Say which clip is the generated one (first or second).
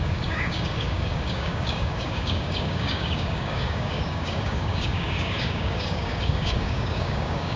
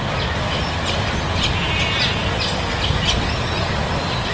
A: first